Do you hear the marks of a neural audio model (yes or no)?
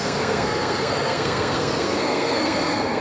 yes